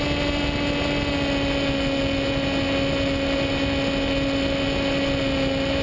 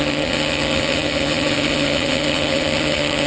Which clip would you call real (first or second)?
first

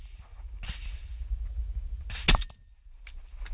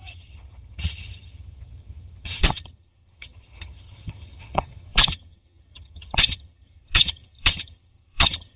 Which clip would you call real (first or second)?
first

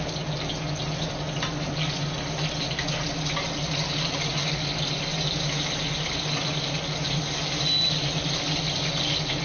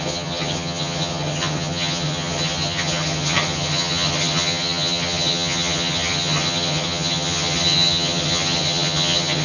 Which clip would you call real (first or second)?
first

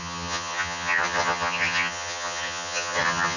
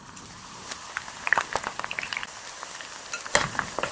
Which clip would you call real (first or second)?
second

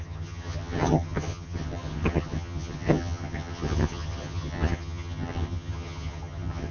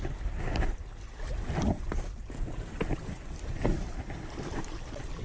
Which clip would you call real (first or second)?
second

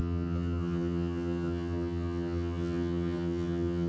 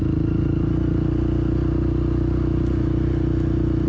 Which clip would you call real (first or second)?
second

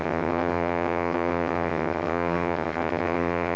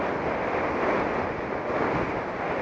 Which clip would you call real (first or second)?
second